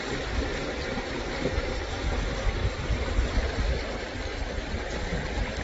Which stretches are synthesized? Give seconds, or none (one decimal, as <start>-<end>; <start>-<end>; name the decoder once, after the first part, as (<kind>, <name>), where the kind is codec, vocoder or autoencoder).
0.9-2.0 (vocoder, BigVGAN v2); 2.6-3.5